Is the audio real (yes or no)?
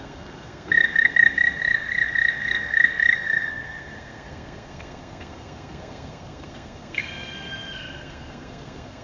no